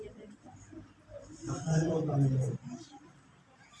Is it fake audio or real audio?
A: fake